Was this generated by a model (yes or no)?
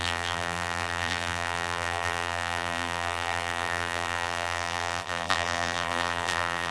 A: yes